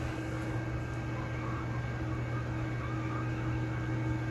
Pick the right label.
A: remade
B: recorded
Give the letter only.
B